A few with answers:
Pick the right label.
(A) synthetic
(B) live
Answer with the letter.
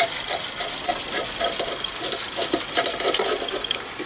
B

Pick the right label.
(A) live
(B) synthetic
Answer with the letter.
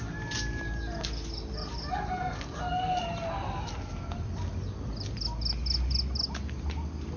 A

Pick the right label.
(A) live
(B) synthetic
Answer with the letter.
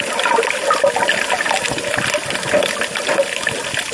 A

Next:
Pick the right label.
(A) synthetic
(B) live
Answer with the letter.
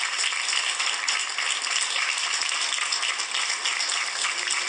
B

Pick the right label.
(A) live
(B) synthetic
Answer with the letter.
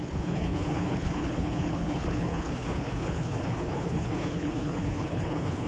B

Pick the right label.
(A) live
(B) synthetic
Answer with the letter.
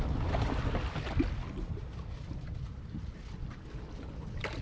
A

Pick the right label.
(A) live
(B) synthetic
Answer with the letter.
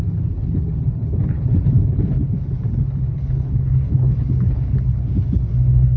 B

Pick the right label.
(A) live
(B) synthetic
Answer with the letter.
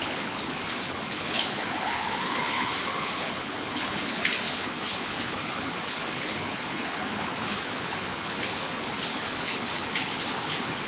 B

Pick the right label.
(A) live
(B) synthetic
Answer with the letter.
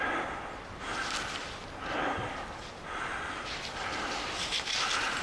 A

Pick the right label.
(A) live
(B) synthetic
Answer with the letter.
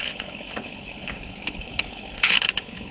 B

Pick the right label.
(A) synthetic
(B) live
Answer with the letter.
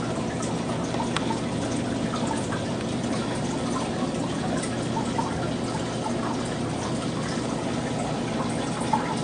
B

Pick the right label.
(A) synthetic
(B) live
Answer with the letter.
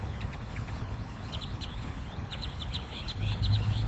A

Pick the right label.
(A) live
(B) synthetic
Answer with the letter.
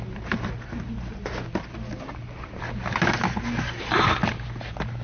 A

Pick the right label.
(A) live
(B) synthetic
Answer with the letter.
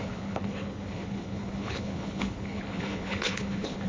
B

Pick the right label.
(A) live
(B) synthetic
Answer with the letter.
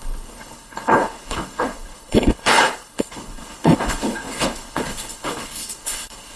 B